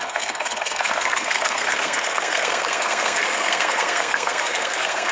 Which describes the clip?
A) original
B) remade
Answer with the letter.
B